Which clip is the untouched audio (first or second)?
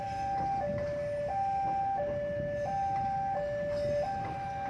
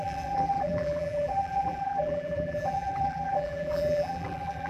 first